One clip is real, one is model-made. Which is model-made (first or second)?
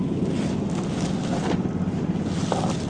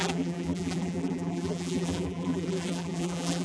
second